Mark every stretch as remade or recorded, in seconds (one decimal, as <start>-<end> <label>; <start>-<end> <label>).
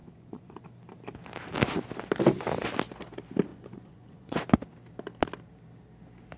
0.0-0.6 remade; 0.6-3.5 recorded; 3.5-4.4 remade; 4.4-6.4 recorded